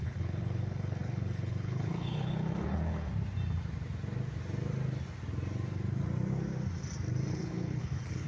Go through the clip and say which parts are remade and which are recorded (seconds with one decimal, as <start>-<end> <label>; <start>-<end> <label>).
0.0-3.1 remade; 3.1-7.3 recorded; 7.3-8.3 remade

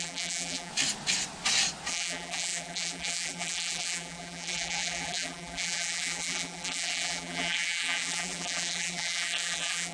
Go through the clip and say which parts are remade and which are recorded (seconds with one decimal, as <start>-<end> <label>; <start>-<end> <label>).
0.0-0.7 remade; 0.7-1.9 recorded; 1.9-9.9 remade

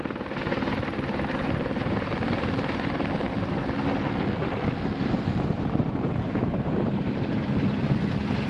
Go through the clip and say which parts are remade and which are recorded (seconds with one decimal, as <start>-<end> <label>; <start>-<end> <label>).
0.0-3.3 remade; 3.3-5.0 recorded; 5.0-8.5 remade

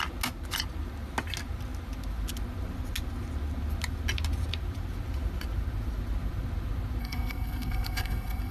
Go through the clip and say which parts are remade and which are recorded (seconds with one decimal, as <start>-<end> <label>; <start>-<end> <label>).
0.0-7.0 recorded; 7.0-8.5 remade

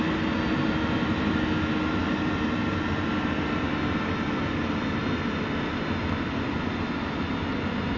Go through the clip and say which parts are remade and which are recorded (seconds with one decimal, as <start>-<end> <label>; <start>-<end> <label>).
0.0-8.0 recorded

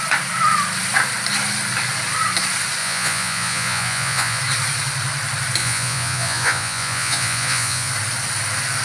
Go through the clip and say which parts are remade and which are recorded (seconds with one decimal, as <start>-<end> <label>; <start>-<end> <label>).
0.0-2.8 recorded; 2.8-4.4 remade; 4.4-5.6 recorded; 5.6-7.9 remade; 7.9-8.8 recorded

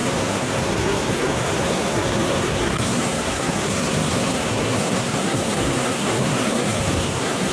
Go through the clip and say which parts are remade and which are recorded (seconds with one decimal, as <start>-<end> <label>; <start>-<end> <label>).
0.0-7.5 remade

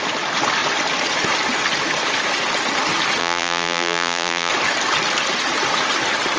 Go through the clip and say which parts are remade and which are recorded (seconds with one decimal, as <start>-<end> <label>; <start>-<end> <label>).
0.0-3.2 recorded; 3.2-4.5 remade; 4.5-6.4 recorded